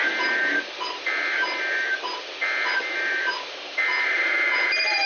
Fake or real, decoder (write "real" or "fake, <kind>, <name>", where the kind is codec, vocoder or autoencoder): fake, vocoder, BigVGAN v2